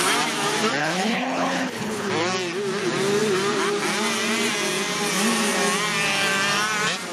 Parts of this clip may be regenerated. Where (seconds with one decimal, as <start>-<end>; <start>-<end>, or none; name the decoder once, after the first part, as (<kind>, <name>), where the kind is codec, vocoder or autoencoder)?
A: 0.8-2.1 (codec, HILCodec)

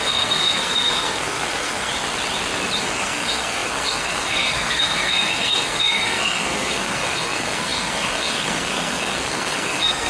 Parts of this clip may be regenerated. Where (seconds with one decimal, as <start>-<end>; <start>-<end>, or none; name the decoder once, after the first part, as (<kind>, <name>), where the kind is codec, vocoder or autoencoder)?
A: 0.0-1.9 (codec, SNAC); 2.8-10.1

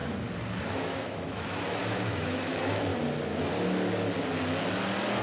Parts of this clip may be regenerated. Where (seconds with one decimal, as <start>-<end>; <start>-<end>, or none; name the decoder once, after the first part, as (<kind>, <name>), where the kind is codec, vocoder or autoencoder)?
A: 0.6-2.9 (autoencoder, DAC-VAE)

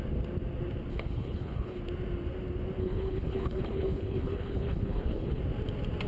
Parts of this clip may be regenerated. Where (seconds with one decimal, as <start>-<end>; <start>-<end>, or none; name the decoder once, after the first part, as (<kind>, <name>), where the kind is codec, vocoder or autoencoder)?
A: 0.9-1.8 (codec, HILCodec); 2.8-5.4